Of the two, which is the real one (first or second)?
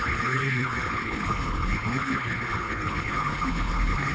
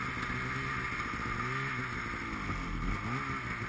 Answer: second